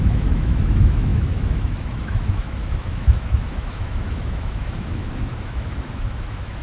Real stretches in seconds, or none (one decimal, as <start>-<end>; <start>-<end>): none